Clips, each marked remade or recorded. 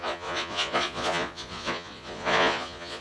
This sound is remade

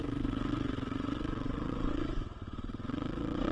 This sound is remade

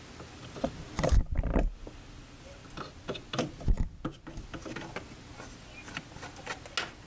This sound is recorded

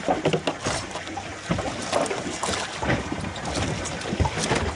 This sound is recorded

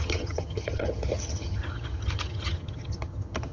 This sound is remade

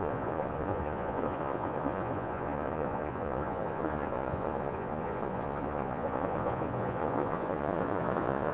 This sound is remade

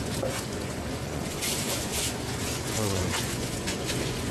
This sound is remade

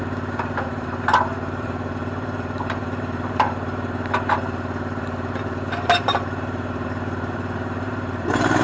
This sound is remade